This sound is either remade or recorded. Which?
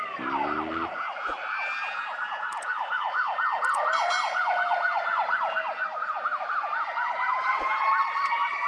remade